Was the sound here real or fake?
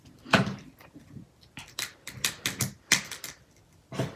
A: real